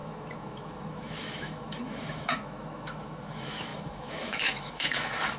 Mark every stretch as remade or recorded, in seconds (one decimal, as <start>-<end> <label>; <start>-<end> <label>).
0.0-5.4 remade